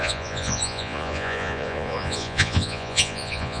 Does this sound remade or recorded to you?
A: remade